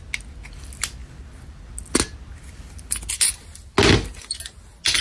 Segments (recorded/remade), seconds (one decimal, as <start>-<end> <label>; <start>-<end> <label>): 0.0-5.0 recorded